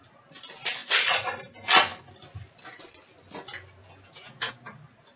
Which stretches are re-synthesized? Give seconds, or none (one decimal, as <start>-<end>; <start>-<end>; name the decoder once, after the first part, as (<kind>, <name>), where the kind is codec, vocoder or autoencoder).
3.8-4.5 (vocoder, Vocos)